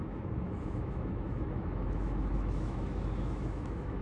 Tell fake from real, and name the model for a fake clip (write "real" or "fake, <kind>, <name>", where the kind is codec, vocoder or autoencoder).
fake, autoencoder, DAC-VAE